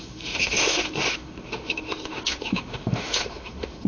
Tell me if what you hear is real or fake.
fake